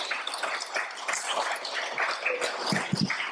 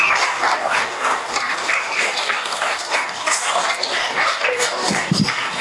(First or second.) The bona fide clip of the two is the first